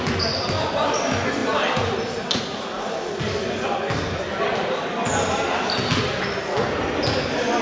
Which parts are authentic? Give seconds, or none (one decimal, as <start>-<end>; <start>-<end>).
0.0-7.6